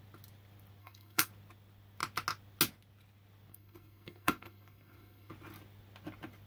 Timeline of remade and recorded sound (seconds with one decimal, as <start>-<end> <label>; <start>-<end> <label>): 0.0-0.8 recorded; 0.8-1.3 remade; 1.3-3.5 recorded; 3.5-5.3 remade; 5.3-6.5 recorded